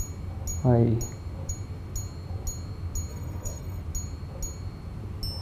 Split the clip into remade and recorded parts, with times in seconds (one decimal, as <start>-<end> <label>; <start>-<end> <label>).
0.0-3.1 recorded; 3.1-3.8 remade; 3.8-5.4 recorded